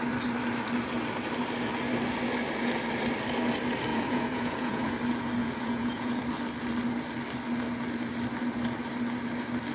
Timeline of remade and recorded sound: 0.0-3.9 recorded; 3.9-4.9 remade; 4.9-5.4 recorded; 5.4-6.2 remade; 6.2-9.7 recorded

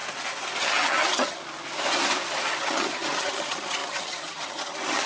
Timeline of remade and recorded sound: 0.0-0.6 recorded; 0.6-1.4 remade; 1.4-2.6 recorded; 2.6-5.1 remade

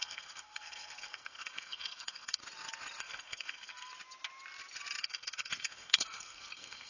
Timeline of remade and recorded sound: 0.0-2.4 remade; 2.4-3.0 recorded; 3.0-3.9 remade; 3.9-5.0 recorded; 5.0-6.9 remade

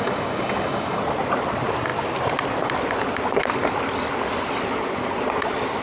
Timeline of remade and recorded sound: 0.0-1.0 remade; 1.0-5.8 recorded